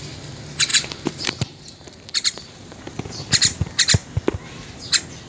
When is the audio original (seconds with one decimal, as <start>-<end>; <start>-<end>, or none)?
0.0-0.7; 2.8-5.3